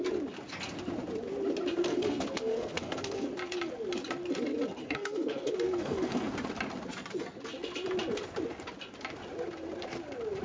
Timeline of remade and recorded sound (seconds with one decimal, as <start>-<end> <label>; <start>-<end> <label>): 0.0-1.8 recorded; 1.8-3.3 remade; 3.3-4.8 recorded; 4.8-6.3 remade; 6.3-10.4 recorded